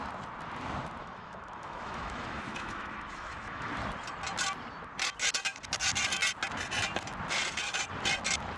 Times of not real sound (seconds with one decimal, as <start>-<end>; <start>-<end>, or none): 1.0-3.7